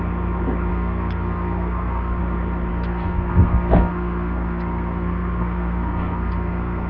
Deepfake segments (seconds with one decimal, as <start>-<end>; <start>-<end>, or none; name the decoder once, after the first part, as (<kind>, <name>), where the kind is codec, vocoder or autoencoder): 0.7-2.2 (codec, SNAC); 2.7-6.9